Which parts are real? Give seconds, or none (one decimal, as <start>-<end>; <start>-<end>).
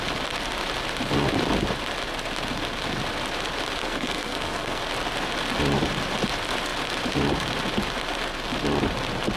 0.0-3.8; 4.8-9.4